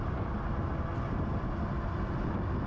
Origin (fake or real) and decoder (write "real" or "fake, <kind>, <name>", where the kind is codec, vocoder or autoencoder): real